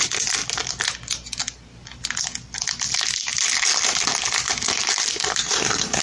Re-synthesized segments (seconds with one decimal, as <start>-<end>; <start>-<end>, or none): 5.4-6.0